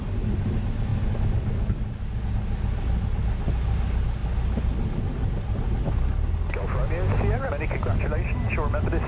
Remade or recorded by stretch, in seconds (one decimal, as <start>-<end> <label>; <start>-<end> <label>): 0.0-9.1 recorded